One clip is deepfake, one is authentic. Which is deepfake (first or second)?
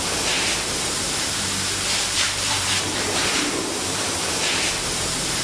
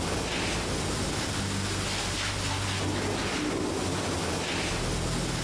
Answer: first